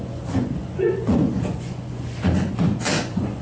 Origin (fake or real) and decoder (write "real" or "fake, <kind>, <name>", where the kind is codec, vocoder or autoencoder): fake, vocoder, Vocos